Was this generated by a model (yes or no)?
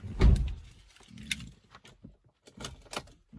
no